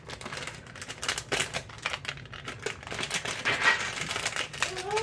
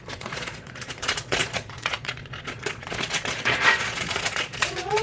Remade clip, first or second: second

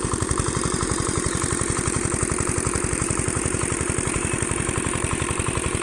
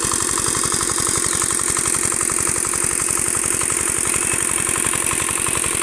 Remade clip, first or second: first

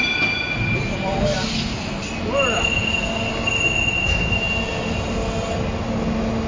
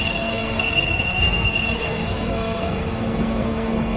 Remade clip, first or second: second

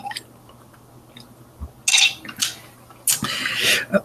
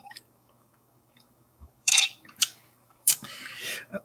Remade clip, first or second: second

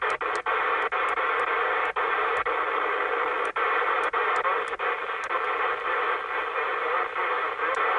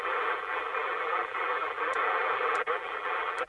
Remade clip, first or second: second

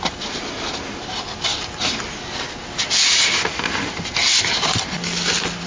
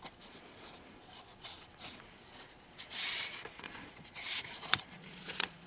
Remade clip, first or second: second